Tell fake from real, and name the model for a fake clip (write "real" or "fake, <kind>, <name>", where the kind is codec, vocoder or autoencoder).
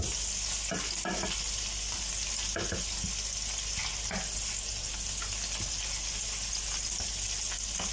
real